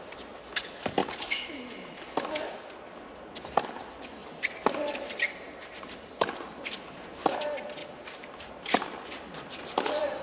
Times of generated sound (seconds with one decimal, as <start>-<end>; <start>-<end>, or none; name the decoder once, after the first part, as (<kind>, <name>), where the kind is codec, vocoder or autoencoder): 1.0-1.5 (vocoder, BigVGAN v2); 4.2-6.7; 7.8-9.1